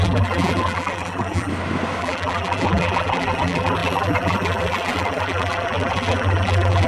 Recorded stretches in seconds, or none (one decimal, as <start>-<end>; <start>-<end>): 1.5-2.0